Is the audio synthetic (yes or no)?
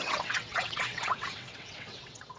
yes